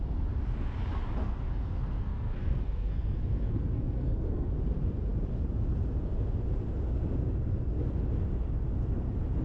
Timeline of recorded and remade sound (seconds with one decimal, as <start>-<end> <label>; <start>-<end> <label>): 0.0-1.2 recorded; 1.2-4.5 remade; 4.5-9.4 recorded